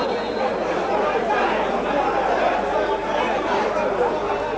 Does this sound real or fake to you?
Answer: real